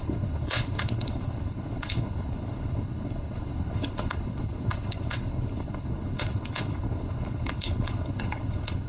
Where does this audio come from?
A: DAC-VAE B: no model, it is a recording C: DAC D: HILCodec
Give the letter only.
D